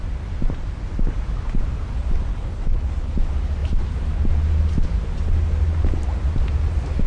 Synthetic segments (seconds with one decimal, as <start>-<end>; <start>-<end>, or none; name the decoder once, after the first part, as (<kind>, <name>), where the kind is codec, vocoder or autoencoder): 2.3-3.1 (codec, HILCodec)